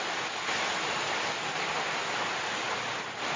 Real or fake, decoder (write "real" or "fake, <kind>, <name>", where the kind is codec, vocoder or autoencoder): real